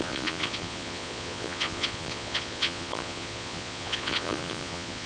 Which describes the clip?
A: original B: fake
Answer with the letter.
B